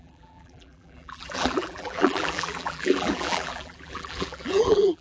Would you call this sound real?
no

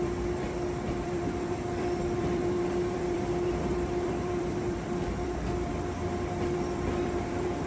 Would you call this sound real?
no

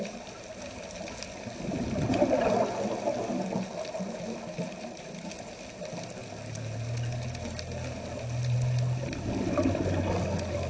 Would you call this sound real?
yes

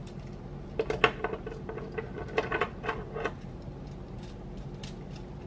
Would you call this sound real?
yes